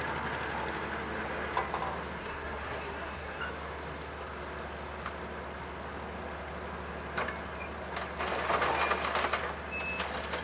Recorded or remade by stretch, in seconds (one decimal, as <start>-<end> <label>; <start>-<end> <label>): 0.0-2.2 recorded; 2.2-3.4 remade; 3.4-10.4 recorded